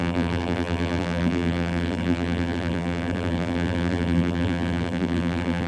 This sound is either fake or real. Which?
fake